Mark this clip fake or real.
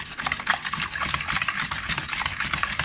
real